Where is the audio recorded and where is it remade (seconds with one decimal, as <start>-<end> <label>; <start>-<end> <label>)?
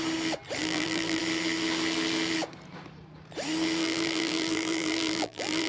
0.0-0.6 recorded; 0.6-1.2 remade; 1.2-3.8 recorded; 3.8-5.7 remade